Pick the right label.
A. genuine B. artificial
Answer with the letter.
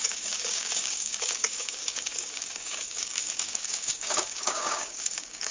B